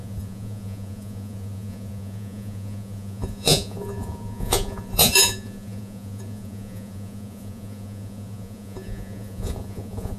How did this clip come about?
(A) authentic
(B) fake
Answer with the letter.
B